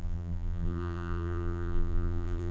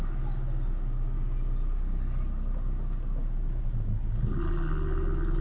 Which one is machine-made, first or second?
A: first